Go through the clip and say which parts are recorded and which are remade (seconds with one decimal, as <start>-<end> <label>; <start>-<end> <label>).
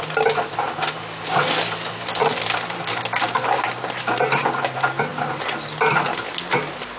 0.0-2.2 recorded; 2.2-3.0 remade; 3.0-7.0 recorded